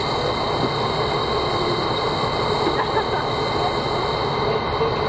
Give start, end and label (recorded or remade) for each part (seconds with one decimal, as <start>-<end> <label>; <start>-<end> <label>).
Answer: 0.0-5.1 recorded